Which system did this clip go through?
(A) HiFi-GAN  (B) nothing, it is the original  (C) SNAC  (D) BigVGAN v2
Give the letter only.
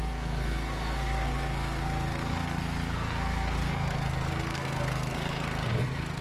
C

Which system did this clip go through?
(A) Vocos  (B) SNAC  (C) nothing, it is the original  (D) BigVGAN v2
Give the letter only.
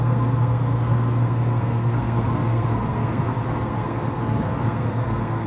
B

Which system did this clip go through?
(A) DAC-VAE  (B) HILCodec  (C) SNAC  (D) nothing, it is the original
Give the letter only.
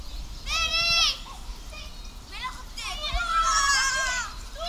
D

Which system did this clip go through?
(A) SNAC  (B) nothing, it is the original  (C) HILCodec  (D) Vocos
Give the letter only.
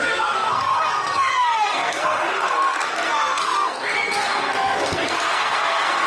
A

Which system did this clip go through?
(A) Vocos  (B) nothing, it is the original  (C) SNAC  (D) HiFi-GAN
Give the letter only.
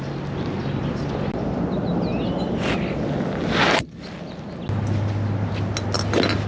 B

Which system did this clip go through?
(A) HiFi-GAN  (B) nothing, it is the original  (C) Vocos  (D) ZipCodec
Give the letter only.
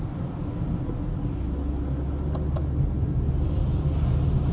B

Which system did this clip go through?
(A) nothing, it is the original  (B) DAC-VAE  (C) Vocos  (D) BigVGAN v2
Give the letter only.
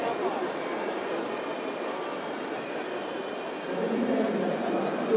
A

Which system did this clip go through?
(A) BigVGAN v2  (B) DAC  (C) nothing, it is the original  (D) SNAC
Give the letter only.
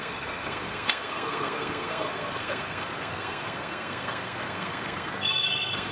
D